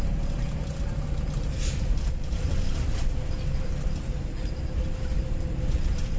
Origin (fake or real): fake